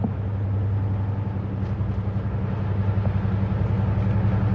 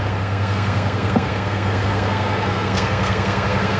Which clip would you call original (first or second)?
first